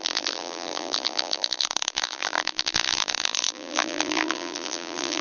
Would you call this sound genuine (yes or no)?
no